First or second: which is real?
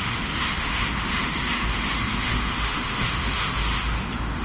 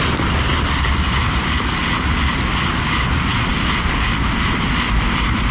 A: second